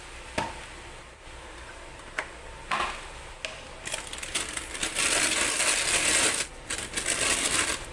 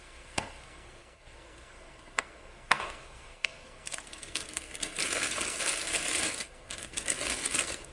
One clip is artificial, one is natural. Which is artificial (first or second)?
second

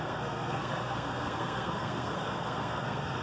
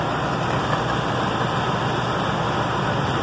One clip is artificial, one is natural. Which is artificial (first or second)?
first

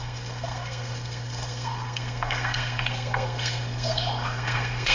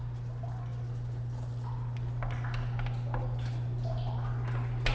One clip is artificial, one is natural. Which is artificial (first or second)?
first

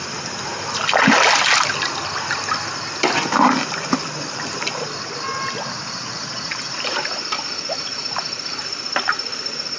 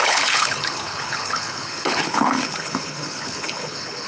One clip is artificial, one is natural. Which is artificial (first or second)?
second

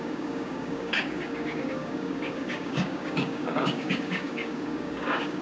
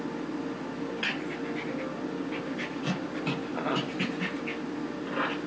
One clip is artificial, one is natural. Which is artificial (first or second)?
first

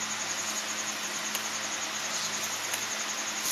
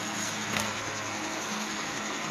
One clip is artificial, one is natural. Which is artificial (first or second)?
second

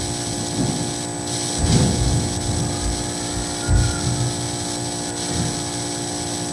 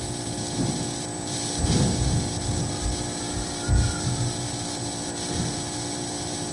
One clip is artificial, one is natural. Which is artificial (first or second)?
second